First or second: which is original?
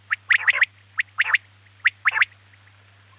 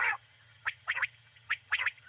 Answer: first